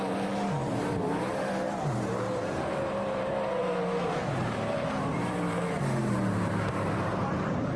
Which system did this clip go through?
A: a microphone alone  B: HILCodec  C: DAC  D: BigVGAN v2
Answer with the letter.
D